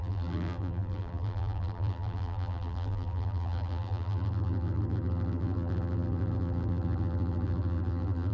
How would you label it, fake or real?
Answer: fake